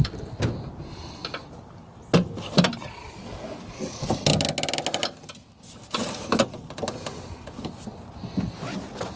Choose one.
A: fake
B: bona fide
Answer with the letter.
B